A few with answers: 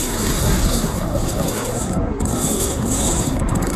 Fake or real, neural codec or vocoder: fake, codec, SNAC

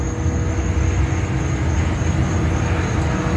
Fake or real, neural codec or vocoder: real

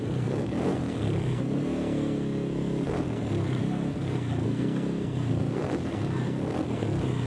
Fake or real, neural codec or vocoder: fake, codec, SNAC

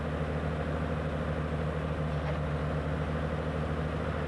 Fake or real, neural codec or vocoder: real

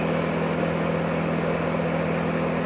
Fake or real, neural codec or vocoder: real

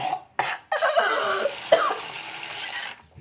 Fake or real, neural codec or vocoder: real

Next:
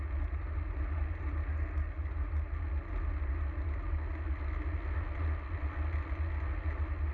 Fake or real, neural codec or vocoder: real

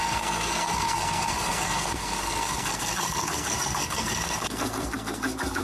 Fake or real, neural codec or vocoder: fake, codec, SNAC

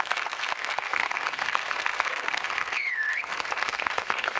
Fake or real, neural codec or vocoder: fake, codec, SNAC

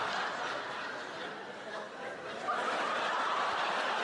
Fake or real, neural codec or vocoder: real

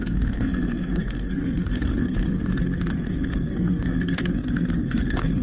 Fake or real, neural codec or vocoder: fake, codec, SNAC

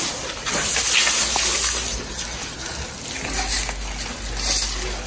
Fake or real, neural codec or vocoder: real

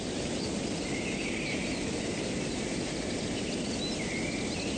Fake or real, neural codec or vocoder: real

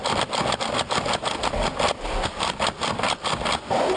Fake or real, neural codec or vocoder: real